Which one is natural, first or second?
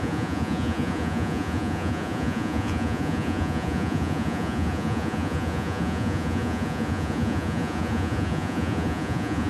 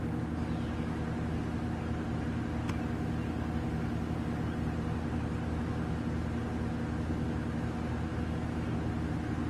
second